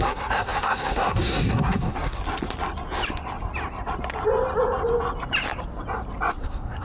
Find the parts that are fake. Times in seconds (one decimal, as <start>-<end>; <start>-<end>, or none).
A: 0.0-2.2; 6.3-6.8